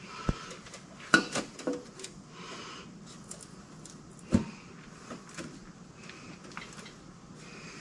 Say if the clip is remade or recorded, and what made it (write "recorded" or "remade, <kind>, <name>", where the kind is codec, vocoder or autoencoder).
recorded